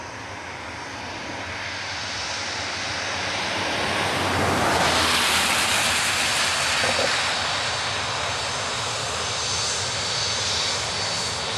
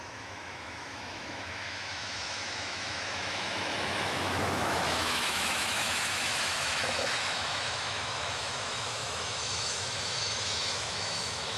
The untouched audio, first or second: first